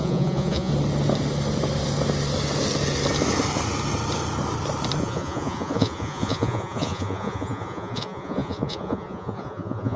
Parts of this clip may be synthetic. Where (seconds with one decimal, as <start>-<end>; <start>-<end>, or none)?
0.0-0.7; 5.0-10.0